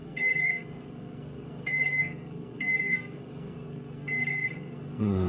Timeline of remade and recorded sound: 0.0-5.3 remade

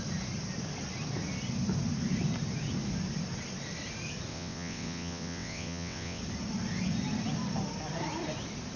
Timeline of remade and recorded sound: 0.0-4.3 recorded; 4.3-6.2 remade; 6.2-8.8 recorded